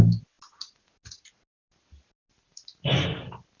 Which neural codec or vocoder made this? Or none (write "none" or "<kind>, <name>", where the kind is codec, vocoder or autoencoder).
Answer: none